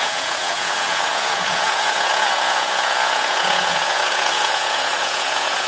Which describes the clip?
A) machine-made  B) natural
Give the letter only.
A